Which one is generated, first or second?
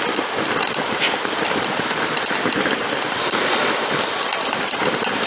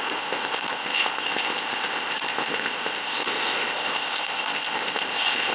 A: second